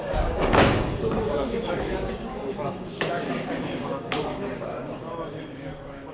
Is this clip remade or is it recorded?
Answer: remade